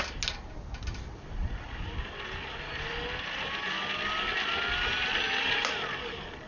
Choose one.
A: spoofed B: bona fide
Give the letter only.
B